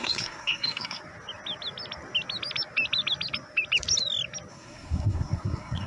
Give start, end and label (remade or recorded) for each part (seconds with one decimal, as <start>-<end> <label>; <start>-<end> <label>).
0.0-1.0 remade; 1.0-4.5 recorded; 4.5-5.9 remade